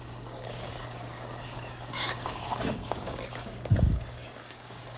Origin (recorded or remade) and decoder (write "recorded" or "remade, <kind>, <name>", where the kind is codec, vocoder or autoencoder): remade, codec, DAC